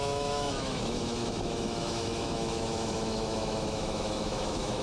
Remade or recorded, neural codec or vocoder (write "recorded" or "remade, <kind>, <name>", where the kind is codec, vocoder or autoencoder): remade, autoencoder, DAC-VAE